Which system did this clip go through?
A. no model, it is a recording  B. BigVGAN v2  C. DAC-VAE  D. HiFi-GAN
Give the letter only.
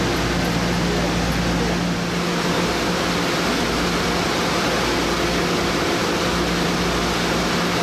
A